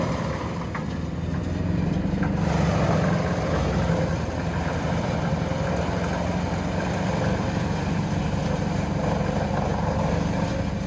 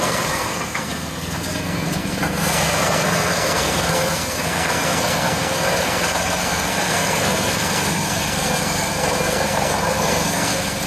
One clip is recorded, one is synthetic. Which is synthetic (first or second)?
second